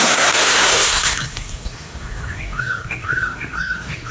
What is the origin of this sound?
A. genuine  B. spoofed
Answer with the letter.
B